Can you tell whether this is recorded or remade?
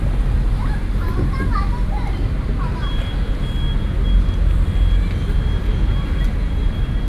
recorded